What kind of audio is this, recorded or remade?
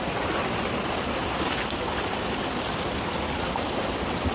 recorded